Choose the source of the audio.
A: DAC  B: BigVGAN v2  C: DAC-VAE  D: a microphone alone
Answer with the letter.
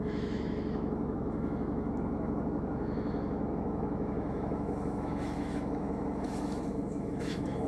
C